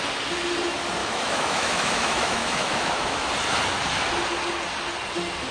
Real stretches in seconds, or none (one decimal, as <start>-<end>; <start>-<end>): 0.0-1.0; 3.3-5.5